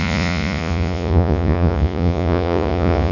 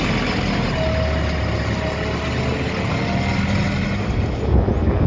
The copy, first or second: first